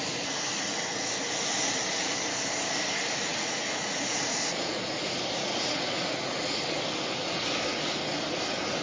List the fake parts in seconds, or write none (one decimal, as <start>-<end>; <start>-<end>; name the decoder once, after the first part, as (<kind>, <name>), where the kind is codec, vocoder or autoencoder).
3.3-5.0 (vocoder, Vocos); 5.4-6.6